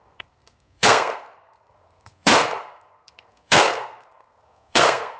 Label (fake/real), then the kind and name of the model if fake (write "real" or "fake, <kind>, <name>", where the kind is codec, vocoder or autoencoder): fake, codec, SNAC